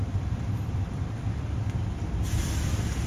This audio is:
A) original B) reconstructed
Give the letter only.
B